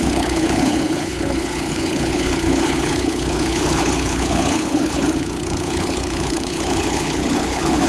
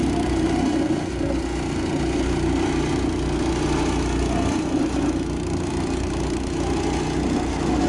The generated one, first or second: first